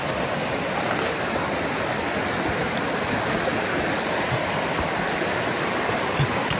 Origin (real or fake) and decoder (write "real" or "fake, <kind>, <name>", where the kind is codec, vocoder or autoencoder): real